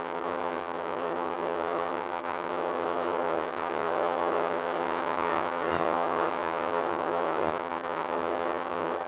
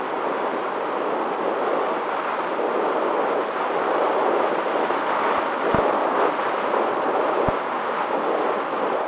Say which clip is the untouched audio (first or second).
second